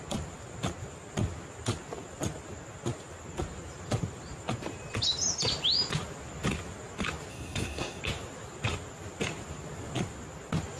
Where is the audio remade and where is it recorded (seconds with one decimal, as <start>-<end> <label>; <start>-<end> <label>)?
0.0-7.3 recorded; 7.3-8.0 remade; 8.0-10.8 recorded